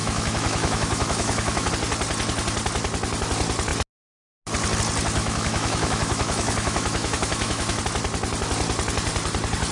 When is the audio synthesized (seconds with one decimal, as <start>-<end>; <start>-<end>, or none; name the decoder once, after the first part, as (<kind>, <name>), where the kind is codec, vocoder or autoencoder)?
0.0-1.7 (autoencoder, DAC-VAE); 5.2-7.8

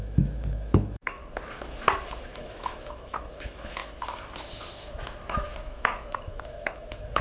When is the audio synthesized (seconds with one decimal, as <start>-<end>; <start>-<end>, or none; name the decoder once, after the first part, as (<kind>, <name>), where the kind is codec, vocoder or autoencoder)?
0.0-1.2 (autoencoder, DAC-VAE); 2.2-3.8; 5.3-7.2

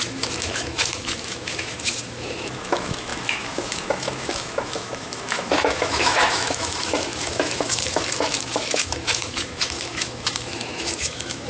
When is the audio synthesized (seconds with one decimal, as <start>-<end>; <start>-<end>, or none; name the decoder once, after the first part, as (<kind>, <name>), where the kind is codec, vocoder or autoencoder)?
0.0-11.5 (autoencoder, DAC-VAE)

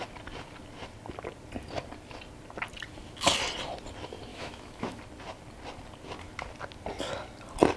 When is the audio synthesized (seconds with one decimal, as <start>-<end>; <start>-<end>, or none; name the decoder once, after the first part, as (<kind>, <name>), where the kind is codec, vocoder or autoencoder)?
4.3-5.0 (autoencoder, DAC-VAE)

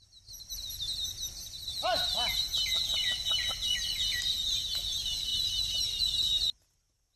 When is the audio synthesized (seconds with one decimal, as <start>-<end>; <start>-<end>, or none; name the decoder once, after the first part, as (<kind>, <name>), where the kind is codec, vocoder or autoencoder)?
none